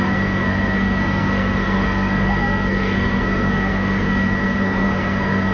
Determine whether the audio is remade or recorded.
remade